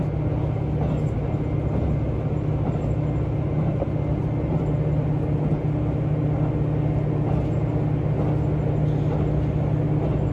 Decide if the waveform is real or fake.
real